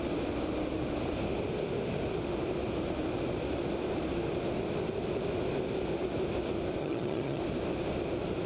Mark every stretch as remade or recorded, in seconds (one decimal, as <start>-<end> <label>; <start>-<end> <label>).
0.0-6.8 recorded; 6.8-7.4 remade; 7.4-8.5 recorded